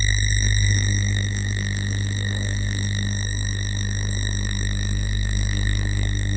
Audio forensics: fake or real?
fake